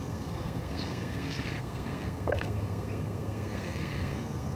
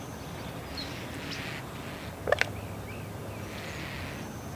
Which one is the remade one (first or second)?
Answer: first